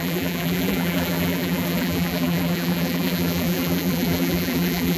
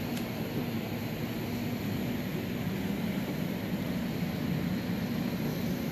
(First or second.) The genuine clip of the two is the second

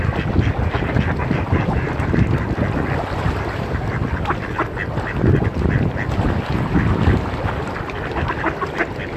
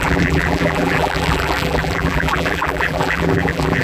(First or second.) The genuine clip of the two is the first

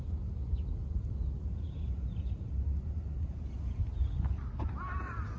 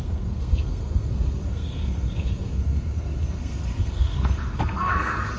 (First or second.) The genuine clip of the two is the first